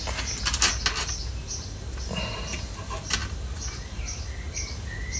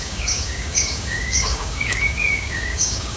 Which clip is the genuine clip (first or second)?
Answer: first